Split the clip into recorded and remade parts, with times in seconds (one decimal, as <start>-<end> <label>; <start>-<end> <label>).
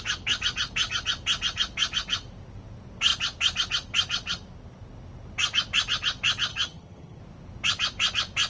0.0-6.5 recorded; 6.5-7.2 remade; 7.2-8.5 recorded